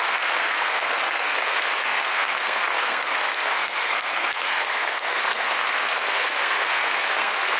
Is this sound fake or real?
fake